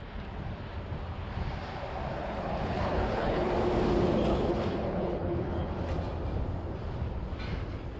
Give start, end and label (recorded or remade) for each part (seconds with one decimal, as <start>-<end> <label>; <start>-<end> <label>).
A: 0.0-2.2 recorded; 2.2-3.5 remade; 3.5-4.3 recorded; 4.3-5.7 remade; 5.7-8.0 recorded